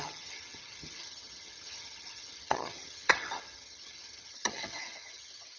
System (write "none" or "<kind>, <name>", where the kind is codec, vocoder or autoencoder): vocoder, HiFi-GAN